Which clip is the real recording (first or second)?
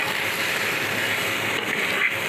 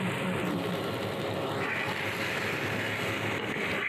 second